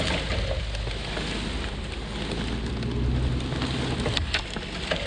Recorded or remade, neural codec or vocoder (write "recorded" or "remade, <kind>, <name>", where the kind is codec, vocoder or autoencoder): recorded